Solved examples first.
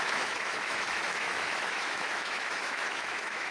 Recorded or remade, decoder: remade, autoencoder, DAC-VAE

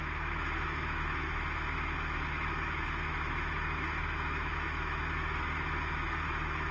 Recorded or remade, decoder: remade, autoencoder, DAC-VAE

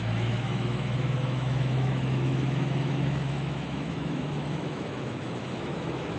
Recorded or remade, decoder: remade, autoencoder, DAC-VAE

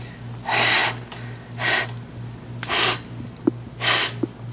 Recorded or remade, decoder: recorded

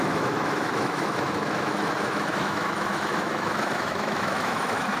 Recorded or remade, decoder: remade, autoencoder, DAC-VAE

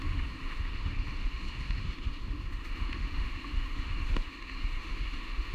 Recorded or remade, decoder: remade, autoencoder, DAC-VAE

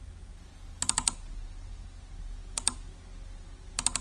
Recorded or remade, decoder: recorded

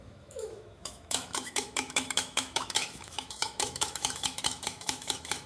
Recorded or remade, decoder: remade, autoencoder, DAC-VAE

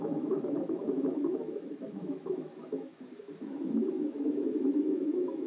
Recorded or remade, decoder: remade, autoencoder, DAC-VAE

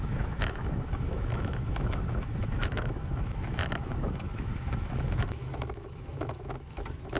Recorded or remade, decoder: remade, autoencoder, DAC-VAE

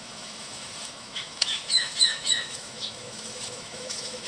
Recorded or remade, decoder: remade, autoencoder, DAC-VAE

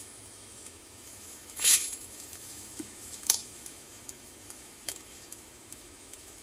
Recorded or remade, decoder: remade, autoencoder, DAC-VAE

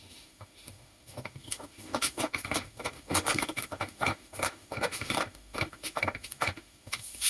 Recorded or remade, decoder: remade, autoencoder, DAC-VAE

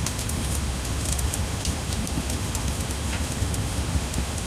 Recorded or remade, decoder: remade, autoencoder, DAC-VAE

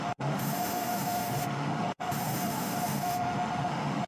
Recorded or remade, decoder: remade, autoencoder, DAC-VAE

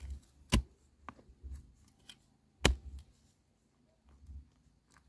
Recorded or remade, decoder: recorded